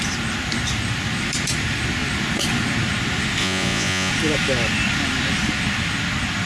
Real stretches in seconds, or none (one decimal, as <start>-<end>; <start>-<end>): 0.0-3.4; 4.1-6.5